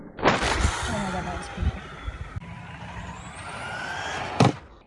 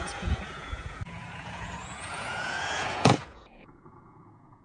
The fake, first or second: second